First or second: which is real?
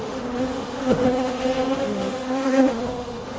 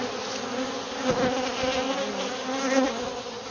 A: second